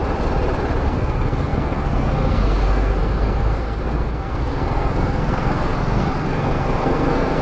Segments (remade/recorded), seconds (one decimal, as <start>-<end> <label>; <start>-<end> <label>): 0.0-0.8 recorded; 0.8-7.4 remade